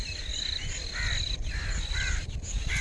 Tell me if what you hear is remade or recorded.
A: recorded